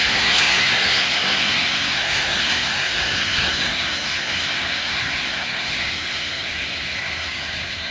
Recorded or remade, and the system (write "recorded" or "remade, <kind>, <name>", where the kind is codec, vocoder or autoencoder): remade, codec, SNAC